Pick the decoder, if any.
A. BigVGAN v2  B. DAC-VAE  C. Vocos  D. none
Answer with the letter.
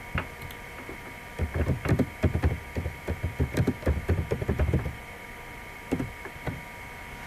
D